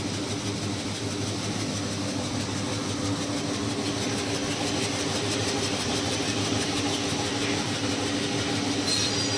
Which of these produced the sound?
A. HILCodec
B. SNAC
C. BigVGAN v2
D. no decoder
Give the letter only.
D